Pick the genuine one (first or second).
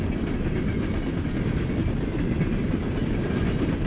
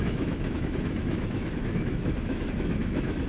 first